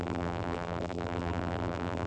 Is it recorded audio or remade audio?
remade